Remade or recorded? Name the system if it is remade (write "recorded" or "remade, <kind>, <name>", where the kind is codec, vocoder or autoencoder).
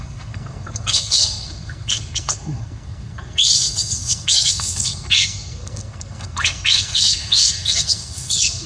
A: remade, codec, SNAC